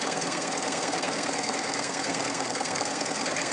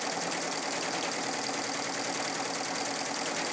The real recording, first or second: second